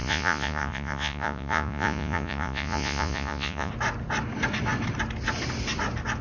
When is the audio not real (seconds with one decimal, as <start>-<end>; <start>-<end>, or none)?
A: 0.0-3.7